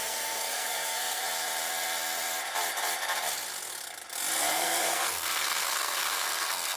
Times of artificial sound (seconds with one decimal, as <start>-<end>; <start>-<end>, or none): 0.0-1.2; 4.5-6.8